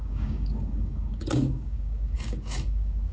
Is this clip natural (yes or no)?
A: no